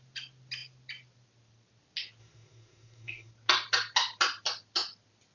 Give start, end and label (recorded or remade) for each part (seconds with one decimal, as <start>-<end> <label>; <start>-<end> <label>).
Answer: 0.0-2.2 recorded; 2.2-3.3 remade; 3.3-5.3 recorded